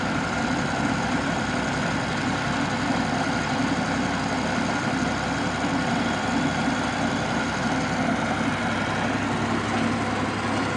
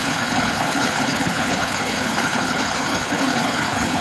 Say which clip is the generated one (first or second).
second